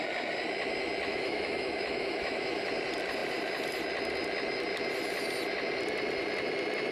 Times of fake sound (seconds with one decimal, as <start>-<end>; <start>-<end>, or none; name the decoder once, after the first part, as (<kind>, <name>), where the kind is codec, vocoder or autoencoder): 1.1-2.7 (autoencoder, DAC-VAE)